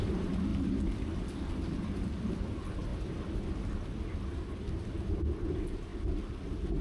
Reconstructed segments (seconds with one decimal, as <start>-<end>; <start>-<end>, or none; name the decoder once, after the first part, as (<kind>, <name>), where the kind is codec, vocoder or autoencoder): none